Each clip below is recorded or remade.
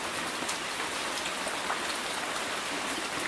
recorded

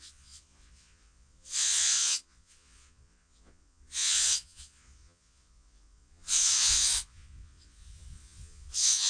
remade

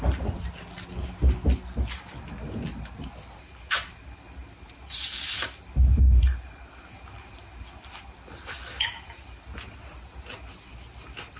recorded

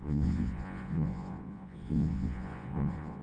remade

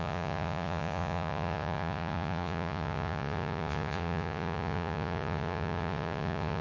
remade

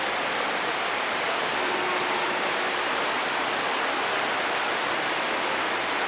recorded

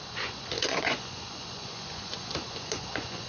remade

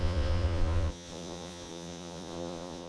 remade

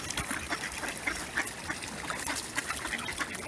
recorded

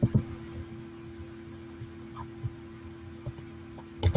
recorded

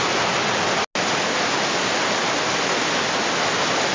recorded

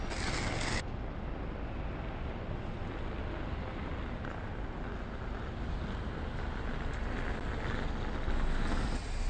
recorded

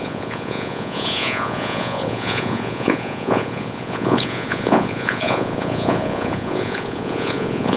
remade